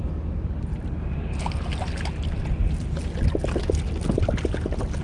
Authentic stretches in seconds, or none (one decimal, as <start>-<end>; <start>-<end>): 0.0-5.0